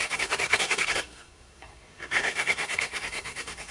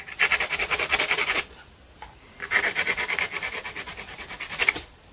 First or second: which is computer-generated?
first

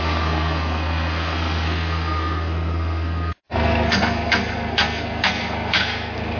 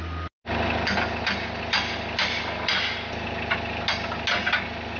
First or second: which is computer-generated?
first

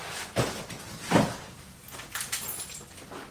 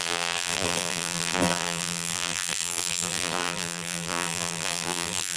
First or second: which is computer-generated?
second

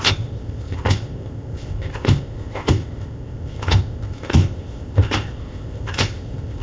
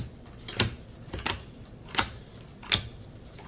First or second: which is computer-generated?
first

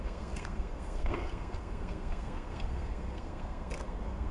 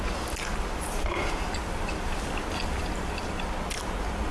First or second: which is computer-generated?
first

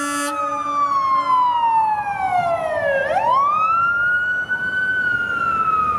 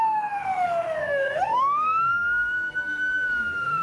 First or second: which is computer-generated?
second